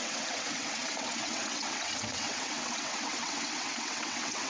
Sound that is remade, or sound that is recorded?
remade